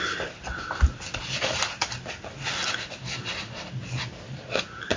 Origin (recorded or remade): recorded